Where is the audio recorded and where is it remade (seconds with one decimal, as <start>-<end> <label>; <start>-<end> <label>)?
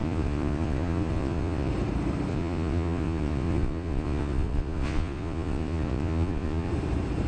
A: 0.0-1.7 remade; 1.7-2.3 recorded; 2.3-6.7 remade; 6.7-7.3 recorded